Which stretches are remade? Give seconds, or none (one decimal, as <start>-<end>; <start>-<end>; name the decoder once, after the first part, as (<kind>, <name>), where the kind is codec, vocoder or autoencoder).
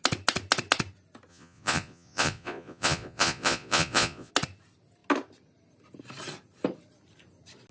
1.3-4.3 (vocoder, Vocos)